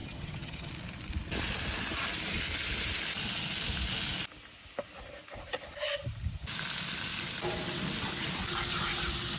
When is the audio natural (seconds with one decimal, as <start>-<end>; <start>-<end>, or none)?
0.7-9.4